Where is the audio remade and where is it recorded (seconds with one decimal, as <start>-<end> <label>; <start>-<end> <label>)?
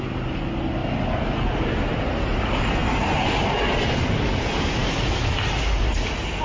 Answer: 0.0-6.4 recorded